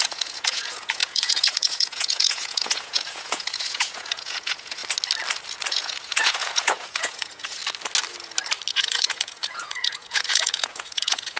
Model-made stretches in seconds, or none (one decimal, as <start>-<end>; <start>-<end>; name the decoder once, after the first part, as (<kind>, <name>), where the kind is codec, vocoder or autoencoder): 0.0-4.8 (vocoder, Vocos); 5.7-7.6; 8.7-11.4